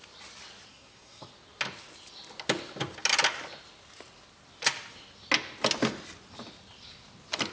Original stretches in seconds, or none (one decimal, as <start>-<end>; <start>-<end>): 0.0-0.7; 1.3-7.5